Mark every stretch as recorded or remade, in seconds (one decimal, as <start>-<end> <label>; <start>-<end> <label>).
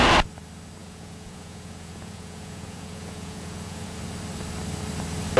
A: 0.0-0.8 recorded; 0.8-4.0 remade; 4.0-5.4 recorded